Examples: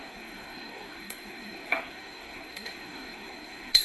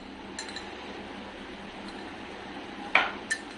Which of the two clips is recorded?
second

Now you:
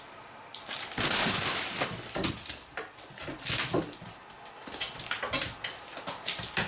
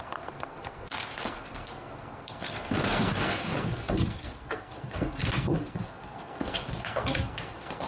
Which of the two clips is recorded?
first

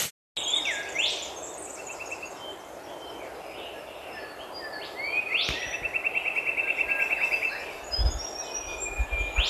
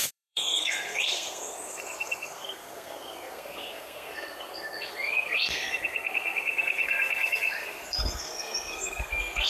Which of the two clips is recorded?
first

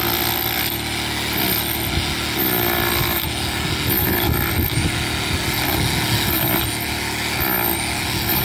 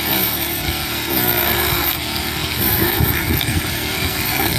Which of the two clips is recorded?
first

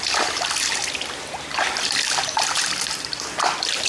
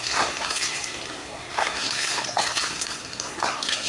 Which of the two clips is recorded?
first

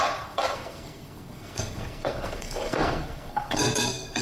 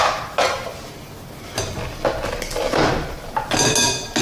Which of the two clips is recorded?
second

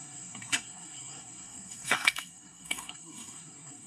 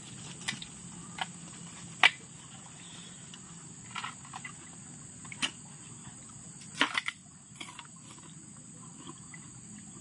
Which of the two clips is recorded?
second